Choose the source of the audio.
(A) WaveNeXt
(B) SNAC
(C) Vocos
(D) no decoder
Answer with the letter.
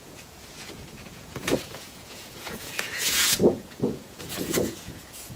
C